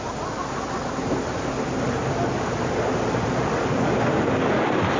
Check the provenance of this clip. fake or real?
real